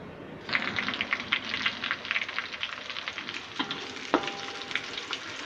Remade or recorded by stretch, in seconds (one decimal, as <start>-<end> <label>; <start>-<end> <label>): 0.0-5.5 recorded